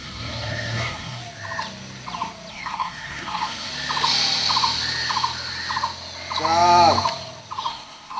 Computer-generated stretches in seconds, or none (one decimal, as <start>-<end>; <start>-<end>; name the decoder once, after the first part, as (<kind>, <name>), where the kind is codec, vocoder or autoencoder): 0.0-1.2 (codec, SNAC); 2.5-3.7; 7.7-8.2